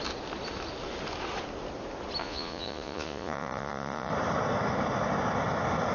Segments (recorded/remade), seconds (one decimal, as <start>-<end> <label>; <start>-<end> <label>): 0.0-2.2 recorded; 2.2-4.1 remade; 4.1-5.9 recorded